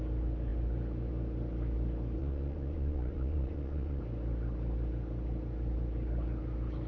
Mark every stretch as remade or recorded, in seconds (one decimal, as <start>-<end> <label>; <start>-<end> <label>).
0.0-2.2 recorded; 2.2-4.0 remade; 4.0-6.9 recorded